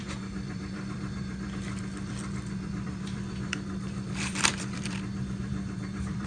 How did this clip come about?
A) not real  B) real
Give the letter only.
A